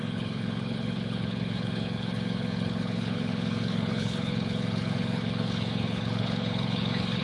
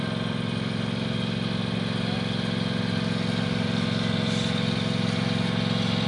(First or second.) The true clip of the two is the second